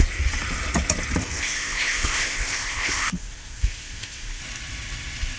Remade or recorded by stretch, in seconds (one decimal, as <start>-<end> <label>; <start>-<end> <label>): 0.0-1.2 recorded; 1.2-4.4 remade; 4.4-5.4 recorded